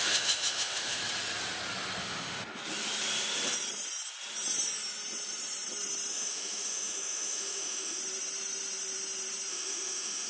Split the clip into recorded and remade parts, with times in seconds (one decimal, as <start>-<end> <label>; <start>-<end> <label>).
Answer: 0.0-1.0 remade; 1.0-2.0 recorded; 2.0-2.6 remade; 2.6-6.1 recorded; 6.1-8.0 remade; 8.0-9.5 recorded; 9.5-10.3 remade